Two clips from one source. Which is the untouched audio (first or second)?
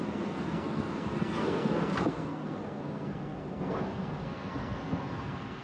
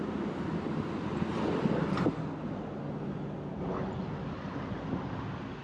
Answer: second